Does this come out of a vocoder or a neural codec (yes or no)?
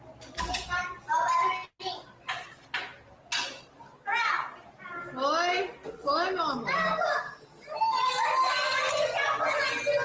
no